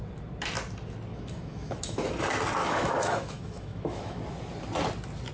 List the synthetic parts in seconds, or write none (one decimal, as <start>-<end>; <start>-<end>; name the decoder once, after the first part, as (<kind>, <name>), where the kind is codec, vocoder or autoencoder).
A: 1.1-2.2 (autoencoder, DAC-VAE); 2.6-4.2